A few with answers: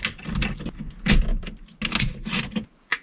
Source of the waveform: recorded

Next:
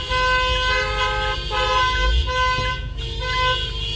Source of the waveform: recorded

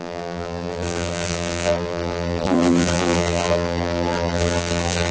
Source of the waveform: remade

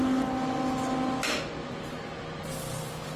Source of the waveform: recorded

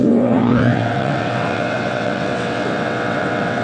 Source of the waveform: remade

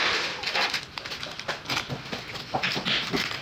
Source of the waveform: recorded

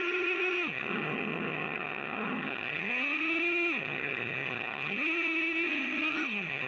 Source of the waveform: remade